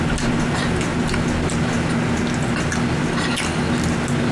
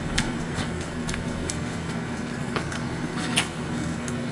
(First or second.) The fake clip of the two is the second